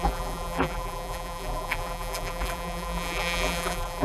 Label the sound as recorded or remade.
remade